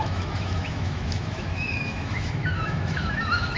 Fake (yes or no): yes